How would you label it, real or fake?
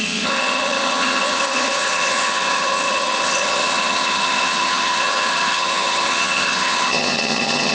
fake